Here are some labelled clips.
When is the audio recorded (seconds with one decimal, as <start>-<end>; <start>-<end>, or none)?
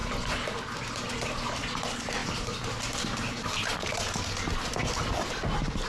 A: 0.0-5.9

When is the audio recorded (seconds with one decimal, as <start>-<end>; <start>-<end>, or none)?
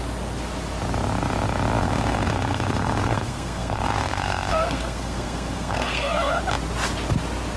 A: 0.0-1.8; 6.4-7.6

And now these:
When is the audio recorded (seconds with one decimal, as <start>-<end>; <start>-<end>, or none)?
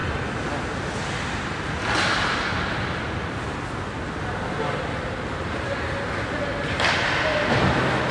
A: 0.0-8.1